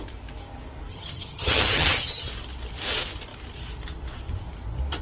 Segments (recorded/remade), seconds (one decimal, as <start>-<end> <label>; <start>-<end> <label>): 0.0-0.9 recorded; 0.9-2.3 remade; 2.3-5.0 recorded